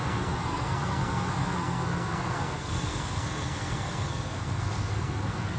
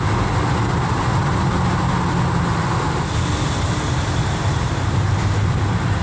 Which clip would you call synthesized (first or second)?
first